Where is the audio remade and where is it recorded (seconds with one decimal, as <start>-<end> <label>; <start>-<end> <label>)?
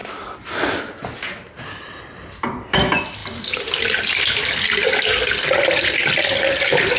0.0-7.0 recorded